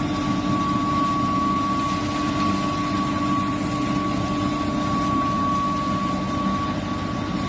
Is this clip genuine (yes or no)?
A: yes